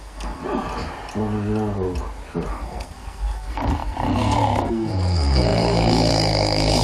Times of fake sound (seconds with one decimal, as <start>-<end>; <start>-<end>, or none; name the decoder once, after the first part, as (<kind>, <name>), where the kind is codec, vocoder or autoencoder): 0.0-0.4 (codec, SNAC); 2.5-6.8